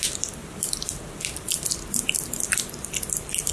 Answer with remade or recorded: recorded